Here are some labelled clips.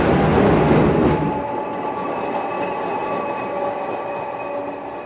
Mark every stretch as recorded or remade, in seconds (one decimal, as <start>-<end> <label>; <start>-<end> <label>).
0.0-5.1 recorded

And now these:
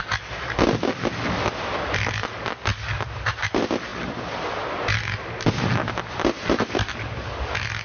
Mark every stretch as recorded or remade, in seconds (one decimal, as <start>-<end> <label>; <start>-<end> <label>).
0.0-7.8 recorded

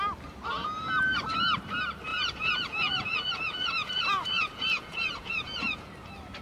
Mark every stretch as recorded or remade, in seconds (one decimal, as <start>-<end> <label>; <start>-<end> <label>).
0.0-2.1 recorded; 2.1-5.9 remade; 5.9-6.4 recorded

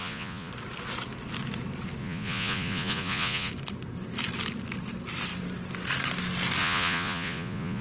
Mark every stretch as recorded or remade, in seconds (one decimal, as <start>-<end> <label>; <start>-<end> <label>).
0.0-0.5 remade; 0.5-2.0 recorded; 2.0-3.5 remade; 3.5-6.6 recorded; 6.6-7.8 remade

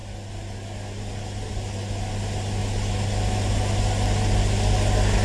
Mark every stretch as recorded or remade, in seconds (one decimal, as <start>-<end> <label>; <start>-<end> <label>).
0.0-5.2 recorded

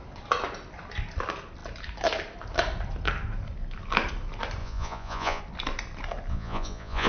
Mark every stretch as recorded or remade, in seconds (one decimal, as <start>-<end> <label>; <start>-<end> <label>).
0.0-4.6 recorded; 4.6-5.4 remade; 5.4-6.3 recorded; 6.3-7.1 remade

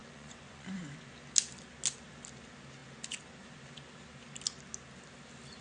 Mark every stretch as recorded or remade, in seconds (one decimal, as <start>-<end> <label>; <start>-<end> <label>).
0.0-0.8 remade; 0.8-5.6 recorded